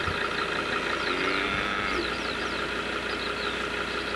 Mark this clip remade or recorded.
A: recorded